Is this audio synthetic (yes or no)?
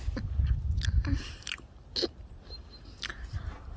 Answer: no